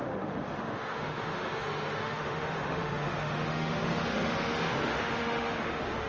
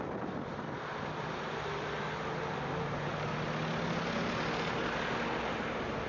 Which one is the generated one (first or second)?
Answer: first